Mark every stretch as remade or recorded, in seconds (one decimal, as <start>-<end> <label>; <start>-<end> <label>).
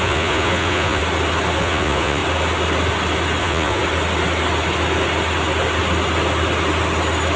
0.0-1.0 remade; 1.0-1.6 recorded; 1.6-2.2 remade; 2.2-3.4 recorded; 3.4-3.8 remade; 3.8-7.4 recorded